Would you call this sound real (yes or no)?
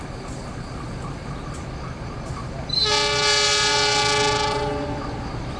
yes